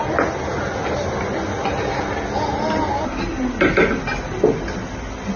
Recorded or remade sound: recorded